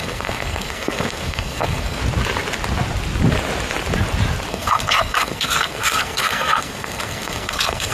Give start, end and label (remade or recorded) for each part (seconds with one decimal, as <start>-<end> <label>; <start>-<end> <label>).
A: 0.0-2.0 remade; 2.0-4.5 recorded; 4.5-7.9 remade